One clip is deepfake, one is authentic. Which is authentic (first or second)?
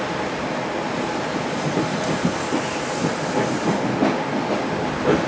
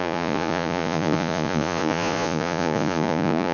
first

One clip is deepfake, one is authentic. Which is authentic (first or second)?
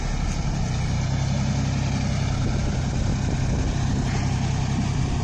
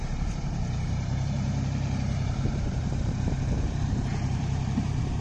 first